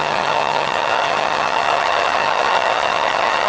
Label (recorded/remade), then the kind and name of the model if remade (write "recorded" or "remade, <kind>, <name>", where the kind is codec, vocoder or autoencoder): remade, vocoder, HiFi-GAN